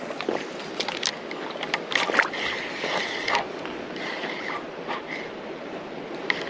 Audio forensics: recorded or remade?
recorded